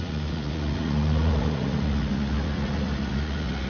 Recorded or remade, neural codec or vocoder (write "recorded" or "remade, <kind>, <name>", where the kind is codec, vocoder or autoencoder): remade, vocoder, Vocos